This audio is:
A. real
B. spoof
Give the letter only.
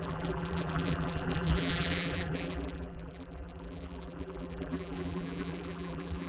B